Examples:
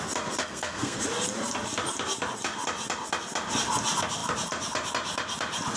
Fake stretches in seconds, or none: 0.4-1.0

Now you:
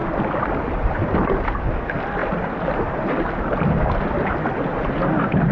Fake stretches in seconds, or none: none

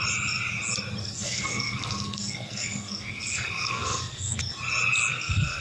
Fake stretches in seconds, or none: 1.0-4.4; 5.1-5.6

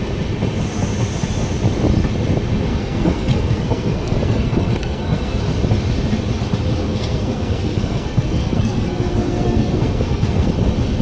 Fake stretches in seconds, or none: 2.7-5.4; 6.9-10.5